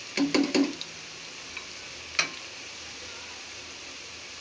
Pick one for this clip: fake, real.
real